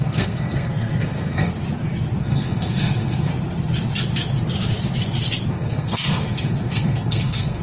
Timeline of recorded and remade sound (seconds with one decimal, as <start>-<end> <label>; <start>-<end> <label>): 0.0-1.5 remade; 1.5-2.2 recorded; 2.2-3.3 remade; 3.3-5.5 recorded; 5.5-7.6 remade